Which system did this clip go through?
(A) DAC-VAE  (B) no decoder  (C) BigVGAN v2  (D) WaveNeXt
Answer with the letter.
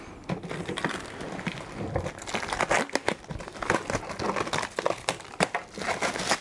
B